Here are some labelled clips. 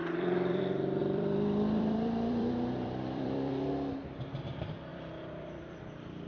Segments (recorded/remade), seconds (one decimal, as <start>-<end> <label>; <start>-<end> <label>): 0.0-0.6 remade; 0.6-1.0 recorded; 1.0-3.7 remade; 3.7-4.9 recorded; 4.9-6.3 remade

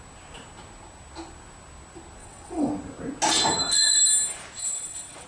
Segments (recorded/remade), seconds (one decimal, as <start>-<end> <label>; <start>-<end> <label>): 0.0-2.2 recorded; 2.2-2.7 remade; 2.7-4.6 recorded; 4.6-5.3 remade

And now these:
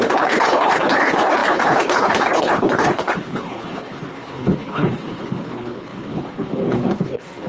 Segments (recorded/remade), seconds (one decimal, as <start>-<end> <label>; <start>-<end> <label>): 0.0-7.5 remade

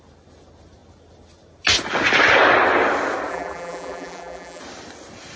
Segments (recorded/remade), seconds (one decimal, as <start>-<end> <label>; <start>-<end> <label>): 0.0-3.3 recorded; 3.3-4.6 remade; 4.6-5.4 recorded